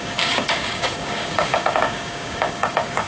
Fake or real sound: fake